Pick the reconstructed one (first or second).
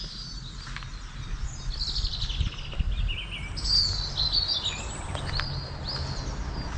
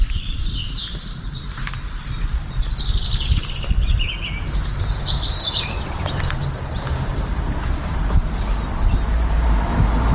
second